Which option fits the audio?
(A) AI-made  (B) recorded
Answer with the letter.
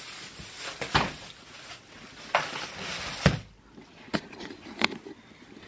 B